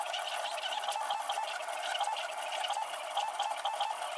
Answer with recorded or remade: recorded